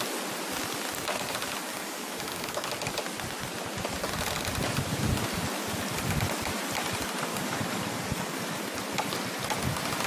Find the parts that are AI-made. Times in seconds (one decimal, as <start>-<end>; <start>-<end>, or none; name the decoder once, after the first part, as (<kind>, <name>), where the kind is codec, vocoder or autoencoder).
1.7-2.7 (codec, DAC); 7.3-8.4